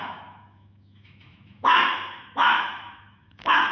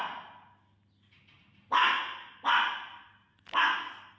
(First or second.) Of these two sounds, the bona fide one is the second